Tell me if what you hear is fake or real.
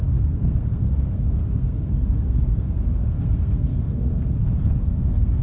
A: fake